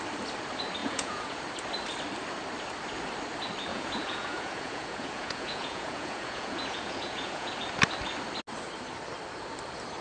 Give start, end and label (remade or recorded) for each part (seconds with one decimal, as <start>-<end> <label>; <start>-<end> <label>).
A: 0.0-0.8 recorded; 0.8-1.4 remade; 1.4-3.7 recorded; 3.7-7.5 remade; 7.5-10.0 recorded